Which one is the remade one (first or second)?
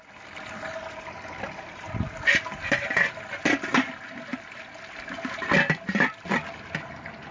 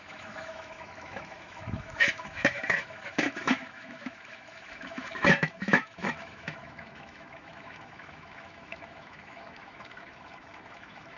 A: second